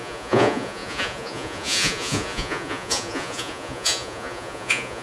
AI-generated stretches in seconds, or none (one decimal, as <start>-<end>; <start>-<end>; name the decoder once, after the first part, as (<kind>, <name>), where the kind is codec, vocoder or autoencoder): 0.0-5.0 (vocoder, Vocos)